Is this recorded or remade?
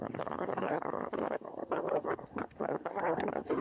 remade